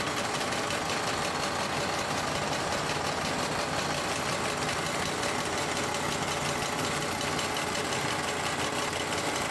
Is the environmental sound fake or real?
real